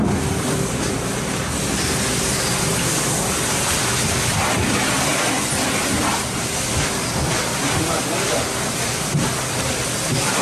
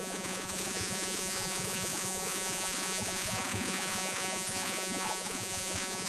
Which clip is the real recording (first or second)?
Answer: first